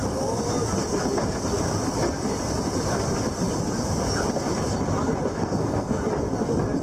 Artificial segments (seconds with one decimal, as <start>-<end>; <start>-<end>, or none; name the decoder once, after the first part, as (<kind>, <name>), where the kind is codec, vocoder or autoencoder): 5.3-6.0 (codec, SNAC)